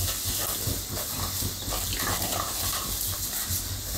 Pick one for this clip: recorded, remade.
recorded